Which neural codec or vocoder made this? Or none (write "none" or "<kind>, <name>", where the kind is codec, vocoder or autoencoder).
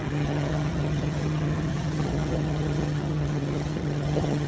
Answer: vocoder, HiFi-GAN